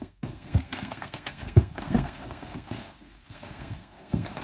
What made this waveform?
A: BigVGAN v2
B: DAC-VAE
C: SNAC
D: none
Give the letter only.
C